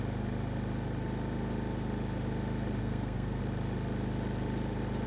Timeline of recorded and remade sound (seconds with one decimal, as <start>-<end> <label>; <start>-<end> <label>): 0.0-2.8 recorded; 2.8-3.4 remade; 3.4-5.1 recorded